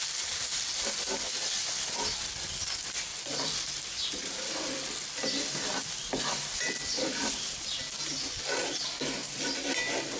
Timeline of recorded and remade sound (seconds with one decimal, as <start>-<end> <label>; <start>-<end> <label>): 0.0-3.1 recorded; 3.1-7.5 remade; 7.5-9.2 recorded; 9.2-10.2 remade